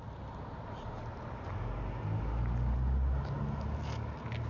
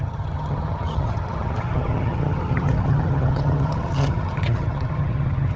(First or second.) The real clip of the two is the first